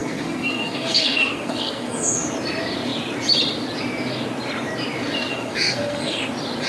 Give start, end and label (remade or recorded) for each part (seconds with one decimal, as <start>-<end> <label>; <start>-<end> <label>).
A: 0.0-2.3 remade; 2.3-5.3 recorded; 5.3-6.2 remade; 6.2-6.7 recorded